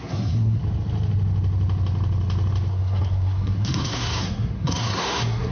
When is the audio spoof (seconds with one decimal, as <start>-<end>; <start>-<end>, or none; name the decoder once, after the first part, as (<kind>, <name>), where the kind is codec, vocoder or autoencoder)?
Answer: 0.0-0.6 (codec, SNAC); 2.7-5.5